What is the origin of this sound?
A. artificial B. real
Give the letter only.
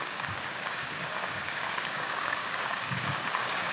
A